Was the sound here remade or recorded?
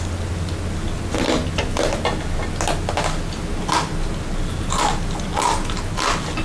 recorded